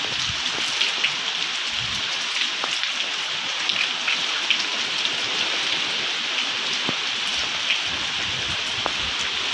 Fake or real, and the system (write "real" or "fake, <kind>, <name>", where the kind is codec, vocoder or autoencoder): real